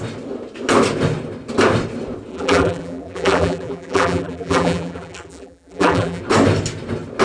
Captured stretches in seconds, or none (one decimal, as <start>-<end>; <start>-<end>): 0.0-2.3; 6.2-7.2